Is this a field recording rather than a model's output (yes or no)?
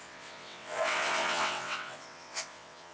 no